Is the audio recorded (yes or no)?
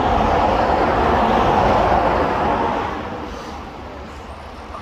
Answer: yes